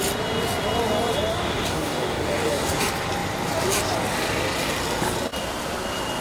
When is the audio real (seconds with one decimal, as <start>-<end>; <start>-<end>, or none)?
0.0-1.3; 2.8-6.2